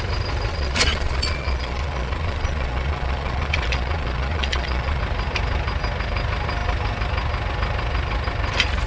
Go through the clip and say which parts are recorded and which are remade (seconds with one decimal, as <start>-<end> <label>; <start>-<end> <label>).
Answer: 0.0-0.5 recorded; 0.5-5.0 remade; 5.0-8.9 recorded

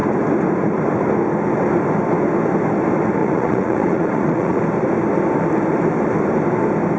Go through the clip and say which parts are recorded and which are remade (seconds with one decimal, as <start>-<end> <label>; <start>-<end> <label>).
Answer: 0.0-3.2 recorded; 3.2-4.6 remade; 4.6-7.0 recorded